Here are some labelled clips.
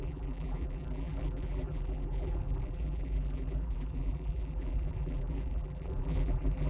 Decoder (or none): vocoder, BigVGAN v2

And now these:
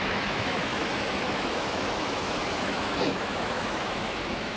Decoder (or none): autoencoder, DAC-VAE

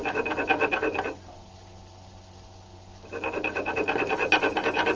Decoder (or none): none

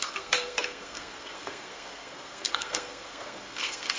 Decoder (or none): codec, SNAC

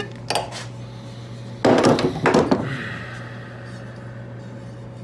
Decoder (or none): none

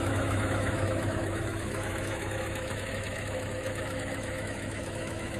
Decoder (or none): autoencoder, DAC-VAE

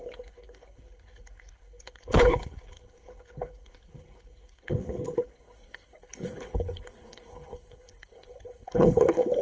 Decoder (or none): codec, HILCodec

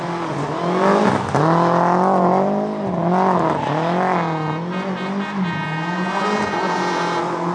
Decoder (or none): none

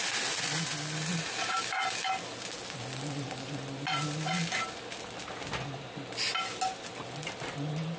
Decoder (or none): none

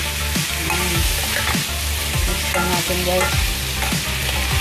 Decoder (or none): none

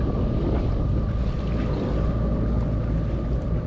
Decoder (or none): none